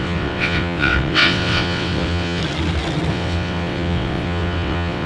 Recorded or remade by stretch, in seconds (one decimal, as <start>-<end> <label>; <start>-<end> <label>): 0.0-2.4 remade; 2.4-3.1 recorded; 3.1-5.1 remade